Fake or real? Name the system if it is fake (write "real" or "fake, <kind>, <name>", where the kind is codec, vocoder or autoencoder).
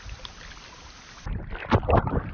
real